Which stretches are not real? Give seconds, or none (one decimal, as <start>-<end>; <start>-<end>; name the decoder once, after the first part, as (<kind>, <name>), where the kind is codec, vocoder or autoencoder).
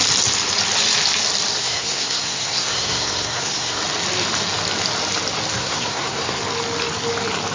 1.6-3.8 (codec, SNAC); 5.6-6.4